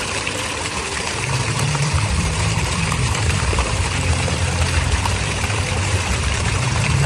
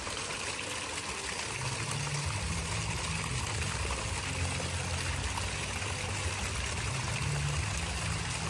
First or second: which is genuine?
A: second